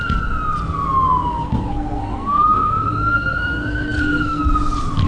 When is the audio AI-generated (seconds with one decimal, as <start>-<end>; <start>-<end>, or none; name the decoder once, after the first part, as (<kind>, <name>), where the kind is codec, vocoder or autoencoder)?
1.3-4.4 (codec, SNAC)